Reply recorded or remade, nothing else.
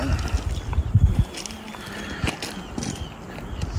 recorded